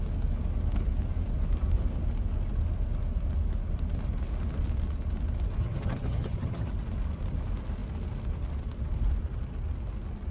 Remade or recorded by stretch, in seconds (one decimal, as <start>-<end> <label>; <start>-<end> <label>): 0.0-5.6 recorded; 5.6-6.7 remade; 6.7-10.3 recorded